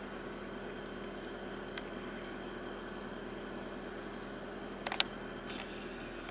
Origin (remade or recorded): recorded